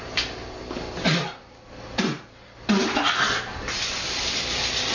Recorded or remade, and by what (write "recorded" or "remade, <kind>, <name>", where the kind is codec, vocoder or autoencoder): recorded